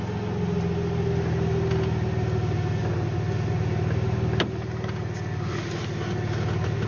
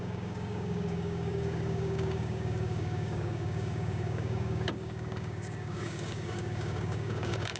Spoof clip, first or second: second